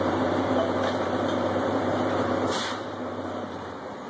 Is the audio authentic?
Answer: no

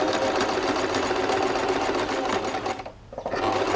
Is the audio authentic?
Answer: yes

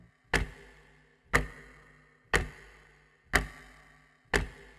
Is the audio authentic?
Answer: yes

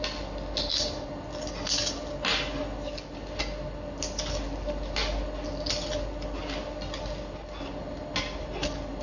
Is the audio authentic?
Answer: yes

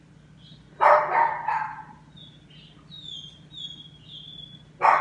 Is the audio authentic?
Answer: yes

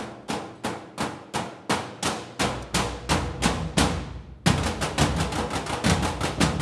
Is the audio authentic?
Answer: yes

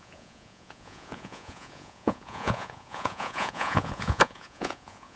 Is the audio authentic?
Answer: no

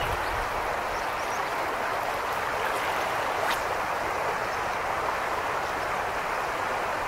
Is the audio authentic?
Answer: yes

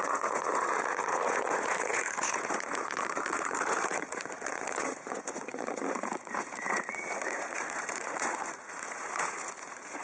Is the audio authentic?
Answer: no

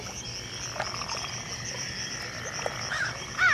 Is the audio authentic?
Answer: yes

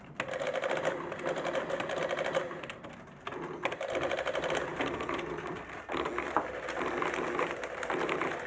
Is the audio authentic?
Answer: yes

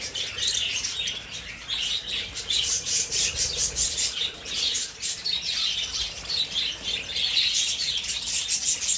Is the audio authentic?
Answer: yes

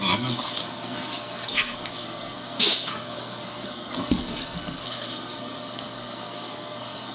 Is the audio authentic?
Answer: no